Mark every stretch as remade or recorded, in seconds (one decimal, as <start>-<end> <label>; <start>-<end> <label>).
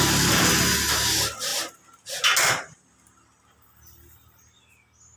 0.0-5.2 recorded